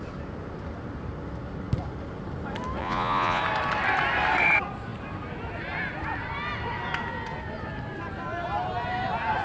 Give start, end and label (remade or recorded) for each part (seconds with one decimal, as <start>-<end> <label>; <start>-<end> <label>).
0.0-2.8 recorded; 2.8-3.4 remade; 3.4-9.4 recorded